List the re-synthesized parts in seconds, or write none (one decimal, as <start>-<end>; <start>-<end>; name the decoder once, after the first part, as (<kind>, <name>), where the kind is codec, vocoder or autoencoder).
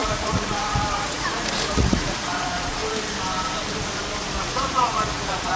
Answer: 0.0-2.8 (vocoder, Vocos); 4.4-5.6